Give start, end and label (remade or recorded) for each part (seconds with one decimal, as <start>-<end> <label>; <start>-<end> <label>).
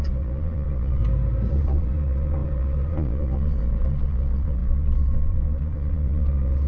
0.0-1.0 remade; 1.0-1.5 recorded; 1.5-6.7 remade